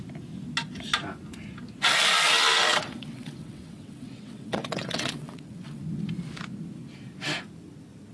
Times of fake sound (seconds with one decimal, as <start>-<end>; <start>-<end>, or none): 2.7-5.8